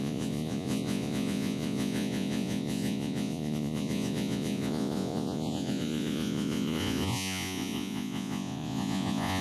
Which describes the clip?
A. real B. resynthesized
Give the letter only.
B